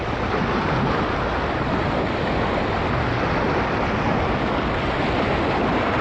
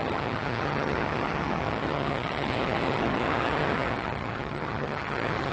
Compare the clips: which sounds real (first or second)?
first